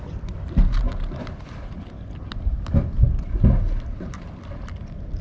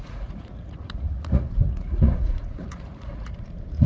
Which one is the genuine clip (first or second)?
first